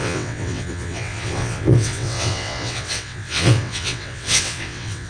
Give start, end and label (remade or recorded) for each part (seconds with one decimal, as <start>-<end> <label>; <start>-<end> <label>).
0.0-5.1 remade